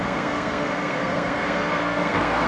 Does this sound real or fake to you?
fake